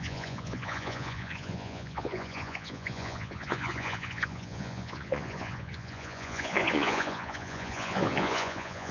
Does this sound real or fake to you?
fake